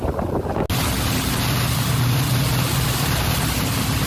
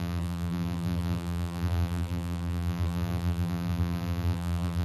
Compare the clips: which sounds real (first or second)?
first